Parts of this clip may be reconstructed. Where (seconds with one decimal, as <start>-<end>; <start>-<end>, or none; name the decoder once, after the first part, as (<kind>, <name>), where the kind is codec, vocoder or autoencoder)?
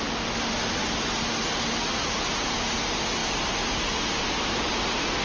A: none